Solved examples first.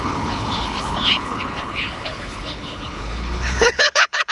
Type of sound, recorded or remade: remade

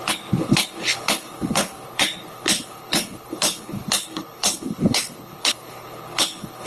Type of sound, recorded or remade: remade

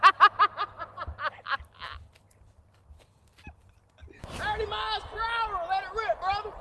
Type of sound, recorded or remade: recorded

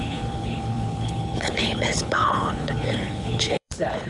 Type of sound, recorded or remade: remade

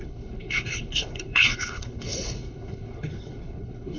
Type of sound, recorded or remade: remade